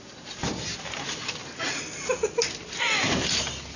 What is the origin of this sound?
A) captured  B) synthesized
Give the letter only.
A